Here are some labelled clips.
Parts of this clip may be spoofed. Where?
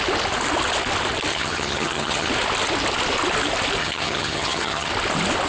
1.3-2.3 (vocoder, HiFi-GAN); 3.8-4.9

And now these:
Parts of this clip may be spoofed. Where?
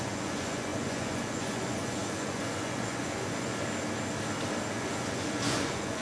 0.0-3.5 (vocoder, Vocos); 4.7-6.0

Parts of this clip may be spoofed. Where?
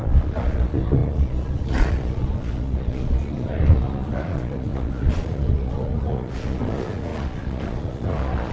0.0-8.5 (vocoder, Vocos)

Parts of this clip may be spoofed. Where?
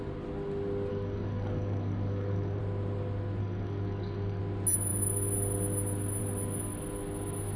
0.9-2.6 (codec, DAC); 3.4-4.4